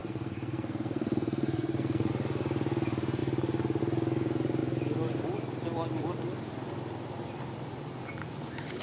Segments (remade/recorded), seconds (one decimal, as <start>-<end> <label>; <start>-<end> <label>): 0.0-2.1 remade; 2.1-8.8 recorded